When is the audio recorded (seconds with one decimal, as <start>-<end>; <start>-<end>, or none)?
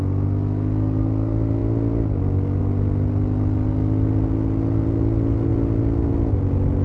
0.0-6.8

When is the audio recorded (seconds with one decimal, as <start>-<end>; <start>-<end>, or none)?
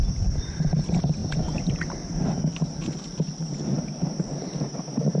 1.2-3.4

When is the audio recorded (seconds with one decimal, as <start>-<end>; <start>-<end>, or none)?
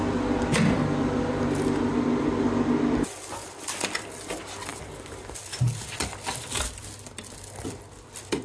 0.0-8.4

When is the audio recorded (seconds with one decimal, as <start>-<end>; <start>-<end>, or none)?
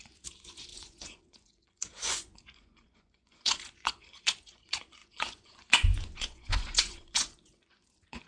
none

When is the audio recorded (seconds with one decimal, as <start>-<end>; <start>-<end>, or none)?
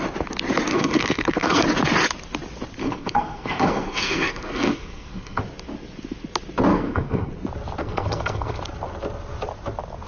0.0-0.7; 1.6-2.8; 5.4-6.7; 7.3-7.8; 8.6-10.1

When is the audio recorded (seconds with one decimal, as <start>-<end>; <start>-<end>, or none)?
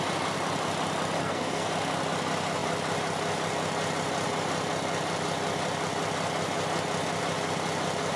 0.0-1.2; 1.7-8.2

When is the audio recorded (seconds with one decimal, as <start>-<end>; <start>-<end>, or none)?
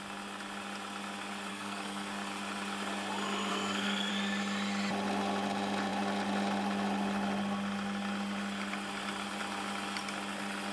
0.0-1.5; 2.1-3.5; 4.1-10.7